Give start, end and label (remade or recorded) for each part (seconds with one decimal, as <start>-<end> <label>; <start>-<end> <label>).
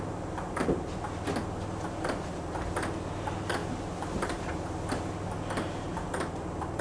0.0-6.8 recorded